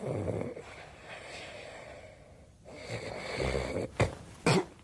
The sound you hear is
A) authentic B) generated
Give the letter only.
A